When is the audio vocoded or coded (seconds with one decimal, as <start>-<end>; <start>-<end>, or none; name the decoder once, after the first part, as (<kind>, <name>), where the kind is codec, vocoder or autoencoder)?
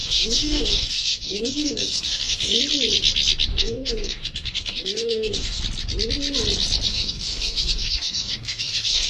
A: 0.0-2.6 (codec, DAC); 3.5-5.6; 6.9-9.1